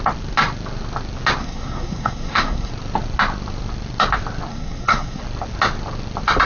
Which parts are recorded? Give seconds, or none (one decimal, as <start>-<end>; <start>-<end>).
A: 0.0-1.4; 2.7-4.5; 5.2-6.4